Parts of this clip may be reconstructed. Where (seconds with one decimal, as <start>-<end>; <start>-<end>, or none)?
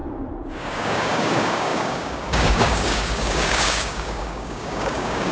0.5-5.3